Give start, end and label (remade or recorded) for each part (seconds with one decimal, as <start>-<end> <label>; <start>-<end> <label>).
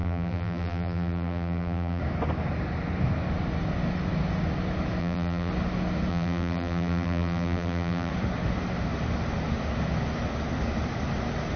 0.0-2.0 remade; 2.0-5.0 recorded; 5.0-5.5 remade; 5.5-6.1 recorded; 6.1-8.1 remade; 8.1-11.6 recorded